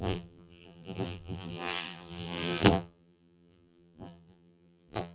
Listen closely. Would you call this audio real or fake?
fake